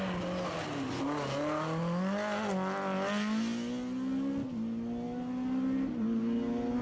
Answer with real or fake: real